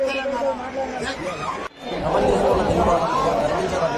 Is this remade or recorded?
recorded